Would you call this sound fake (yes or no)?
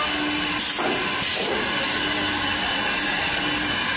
no